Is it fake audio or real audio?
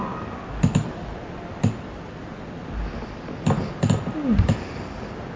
real